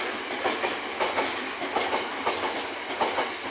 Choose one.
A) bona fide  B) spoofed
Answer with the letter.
A